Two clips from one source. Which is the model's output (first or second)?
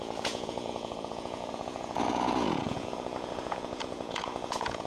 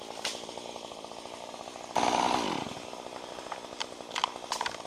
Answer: first